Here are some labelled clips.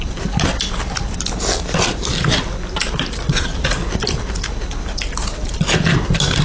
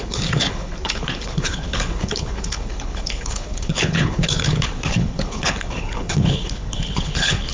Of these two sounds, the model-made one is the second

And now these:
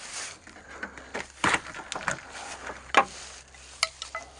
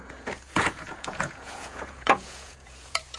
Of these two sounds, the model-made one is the second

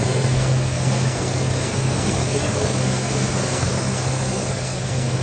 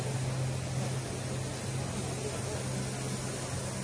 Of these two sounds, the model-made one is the first